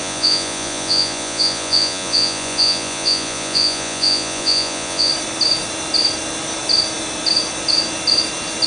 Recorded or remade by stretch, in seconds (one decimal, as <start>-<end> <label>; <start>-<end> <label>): 0.0-5.1 remade; 5.1-8.7 recorded